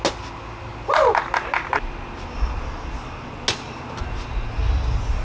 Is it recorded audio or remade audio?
recorded